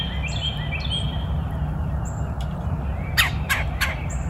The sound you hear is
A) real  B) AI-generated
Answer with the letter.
A